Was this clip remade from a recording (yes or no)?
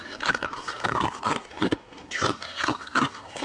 yes